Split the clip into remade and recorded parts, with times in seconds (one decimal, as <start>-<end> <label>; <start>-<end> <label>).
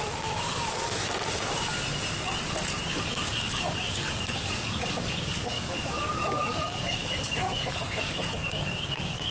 0.0-1.0 remade; 1.0-2.9 recorded; 2.9-9.3 remade